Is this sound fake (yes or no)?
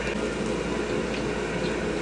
no